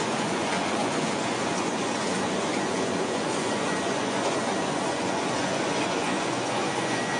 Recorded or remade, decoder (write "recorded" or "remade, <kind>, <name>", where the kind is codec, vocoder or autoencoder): remade, vocoder, Vocos